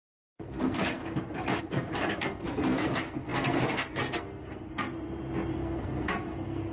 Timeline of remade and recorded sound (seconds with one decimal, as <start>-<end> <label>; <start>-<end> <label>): 0.0-1.0 remade; 1.0-1.6 recorded; 1.6-4.9 remade; 4.9-5.5 recorded; 5.5-6.7 remade